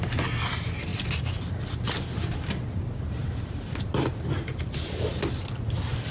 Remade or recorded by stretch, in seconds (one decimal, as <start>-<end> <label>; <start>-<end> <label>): 0.0-6.1 recorded

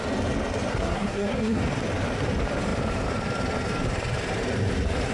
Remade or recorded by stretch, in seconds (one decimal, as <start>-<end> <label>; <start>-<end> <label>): 0.0-0.7 recorded; 0.7-1.6 remade; 1.6-5.1 recorded

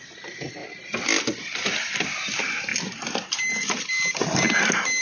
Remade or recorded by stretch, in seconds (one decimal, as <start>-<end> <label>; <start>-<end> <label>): 0.0-0.6 recorded; 0.6-2.0 remade; 2.0-2.7 recorded; 2.7-3.9 remade; 3.9-5.0 recorded

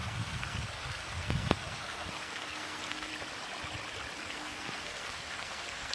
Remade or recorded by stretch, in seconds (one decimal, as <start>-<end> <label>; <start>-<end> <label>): 0.0-3.1 remade; 3.1-4.2 recorded; 4.2-5.9 remade

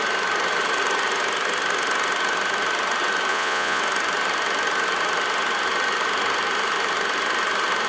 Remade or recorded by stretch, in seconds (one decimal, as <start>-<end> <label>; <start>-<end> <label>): 0.0-3.3 recorded; 3.3-3.8 remade; 3.8-7.9 recorded

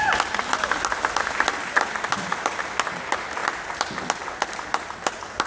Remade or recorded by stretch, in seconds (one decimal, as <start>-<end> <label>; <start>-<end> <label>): 0.0-5.5 recorded

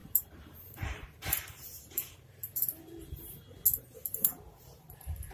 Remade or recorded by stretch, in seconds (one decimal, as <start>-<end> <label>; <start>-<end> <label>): 0.0-3.2 remade; 3.2-3.7 recorded; 3.7-5.3 remade

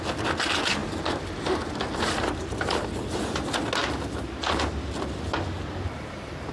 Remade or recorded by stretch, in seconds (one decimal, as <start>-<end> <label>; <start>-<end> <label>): 0.0-6.5 recorded